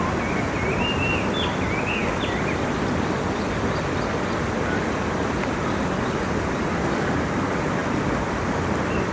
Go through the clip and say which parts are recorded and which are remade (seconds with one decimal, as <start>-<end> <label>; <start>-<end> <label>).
0.0-9.1 recorded